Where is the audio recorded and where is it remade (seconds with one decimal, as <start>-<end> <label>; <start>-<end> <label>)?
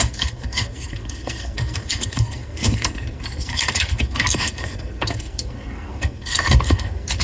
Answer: 0.0-7.2 remade